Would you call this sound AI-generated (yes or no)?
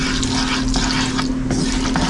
no